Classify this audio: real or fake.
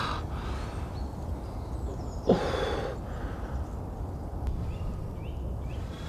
real